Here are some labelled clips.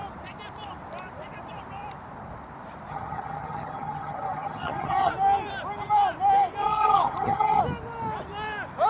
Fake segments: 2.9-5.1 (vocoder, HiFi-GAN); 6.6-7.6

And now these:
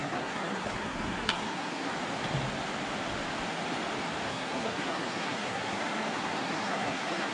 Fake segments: 0.0-1.9 (codec, SNAC); 4.3-7.3

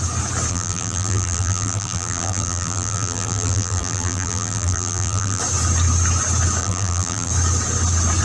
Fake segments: 0.5-5.4 (vocoder, BigVGAN v2); 6.6-7.3

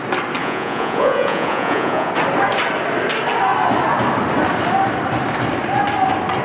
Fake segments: 0.4-2.1 (vocoder, Vocos)

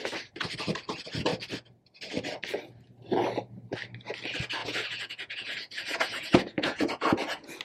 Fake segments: 4.6-7.6 (vocoder, Vocos)

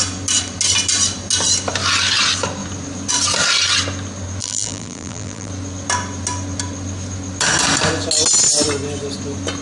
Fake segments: 4.4-5.5 (vocoder, BigVGAN v2)

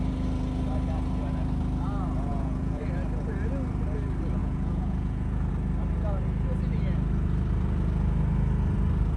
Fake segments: 2.3-2.8 (vocoder, Vocos); 4.4-5.5

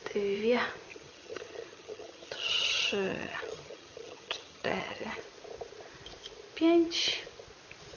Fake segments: 0.9-5.2 (vocoder, HiFi-GAN)